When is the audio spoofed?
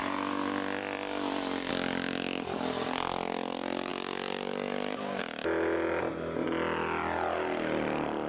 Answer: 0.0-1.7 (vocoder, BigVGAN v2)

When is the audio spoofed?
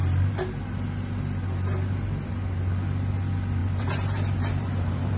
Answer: 3.6-5.2 (vocoder, BigVGAN v2)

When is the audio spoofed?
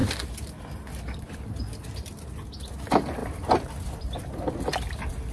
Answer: none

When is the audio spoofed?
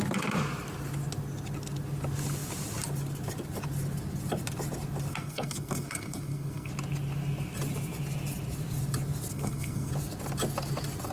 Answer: 5.1-6.7 (codec, SNAC); 9.3-9.9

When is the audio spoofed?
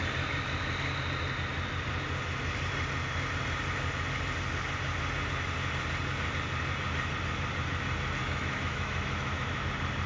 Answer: 8.2-9.7 (autoencoder, DAC-VAE)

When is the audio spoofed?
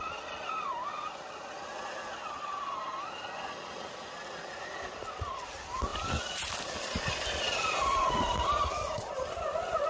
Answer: none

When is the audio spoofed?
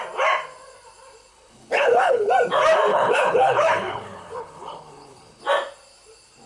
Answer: 1.3-2.3 (codec, HILCodec); 2.9-5.4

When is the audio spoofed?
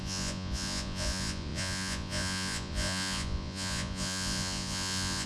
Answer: 0.0-5.3 (vocoder, Vocos)